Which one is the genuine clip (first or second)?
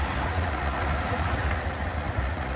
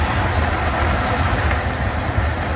second